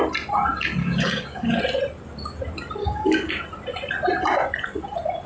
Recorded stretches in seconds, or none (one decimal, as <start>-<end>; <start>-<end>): 0.0-0.8; 1.6-2.8; 3.3-5.3